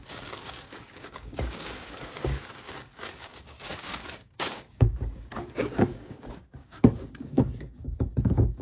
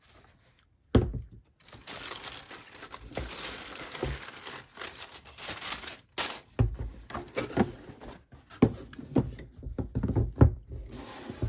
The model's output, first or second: first